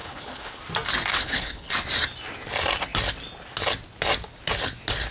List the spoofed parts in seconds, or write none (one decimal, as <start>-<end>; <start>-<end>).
0.0-0.6; 1.1-1.7